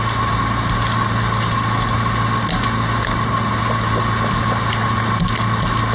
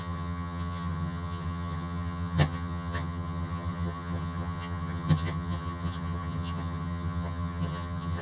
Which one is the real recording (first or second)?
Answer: first